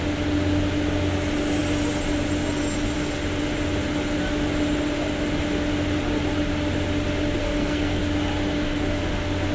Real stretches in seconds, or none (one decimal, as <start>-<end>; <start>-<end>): 0.0-7.4; 8.0-9.5